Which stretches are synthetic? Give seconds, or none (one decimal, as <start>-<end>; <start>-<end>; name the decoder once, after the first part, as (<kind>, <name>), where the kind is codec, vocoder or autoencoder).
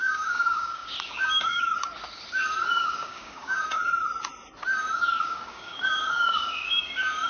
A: 0.0-2.0 (codec, DAC); 2.7-3.8; 5.2-7.3